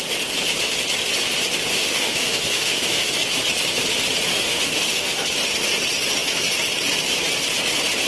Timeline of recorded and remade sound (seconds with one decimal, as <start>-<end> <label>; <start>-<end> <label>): 0.0-1.7 recorded; 1.7-3.1 remade; 3.1-4.3 recorded; 4.3-5.1 remade; 5.1-8.1 recorded